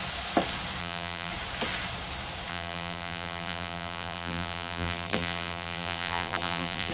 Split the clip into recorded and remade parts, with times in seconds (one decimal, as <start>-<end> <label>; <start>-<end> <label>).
0.0-0.8 recorded; 0.8-1.3 remade; 1.3-2.5 recorded; 2.5-6.9 remade